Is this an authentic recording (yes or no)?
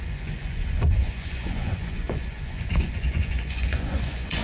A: no